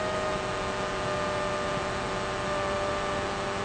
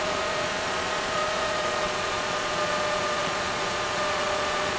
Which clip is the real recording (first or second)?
first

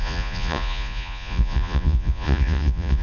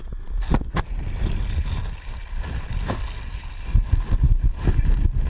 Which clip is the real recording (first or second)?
second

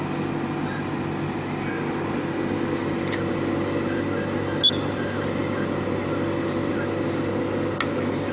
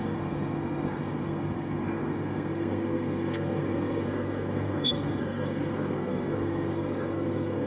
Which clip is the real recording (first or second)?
first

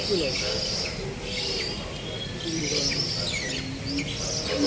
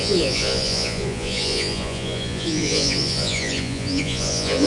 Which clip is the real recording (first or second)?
first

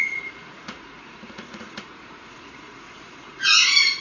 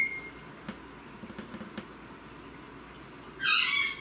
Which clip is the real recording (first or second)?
second